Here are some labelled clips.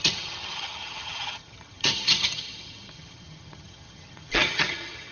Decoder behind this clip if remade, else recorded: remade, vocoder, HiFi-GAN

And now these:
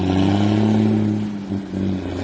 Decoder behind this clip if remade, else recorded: recorded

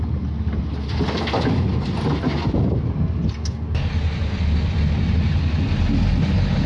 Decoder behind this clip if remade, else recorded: recorded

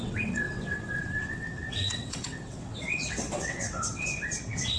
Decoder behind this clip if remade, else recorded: remade, vocoder, WaveNeXt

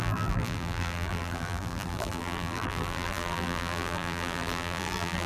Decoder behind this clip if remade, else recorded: remade, vocoder, BigVGAN v2